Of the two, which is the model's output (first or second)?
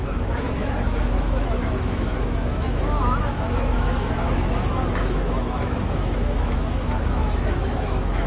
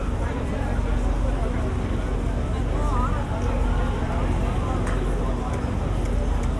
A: first